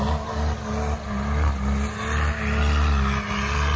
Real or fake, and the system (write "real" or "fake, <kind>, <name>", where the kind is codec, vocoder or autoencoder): real